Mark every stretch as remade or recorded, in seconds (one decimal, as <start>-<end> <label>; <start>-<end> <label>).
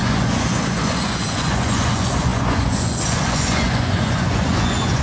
0.0-5.0 remade